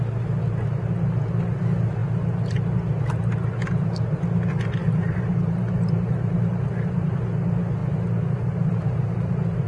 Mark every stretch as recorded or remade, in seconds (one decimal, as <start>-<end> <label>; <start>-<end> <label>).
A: 0.0-4.8 recorded; 4.8-7.2 remade; 7.2-7.8 recorded; 7.8-9.7 remade